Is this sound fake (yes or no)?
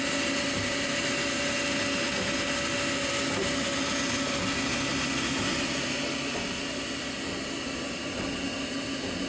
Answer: no